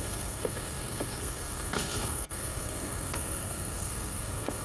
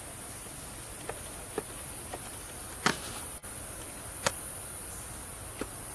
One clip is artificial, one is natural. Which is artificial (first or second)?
first